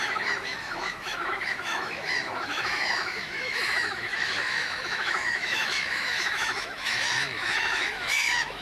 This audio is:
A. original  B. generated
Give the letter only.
B